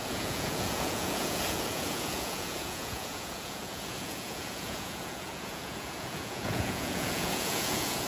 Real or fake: fake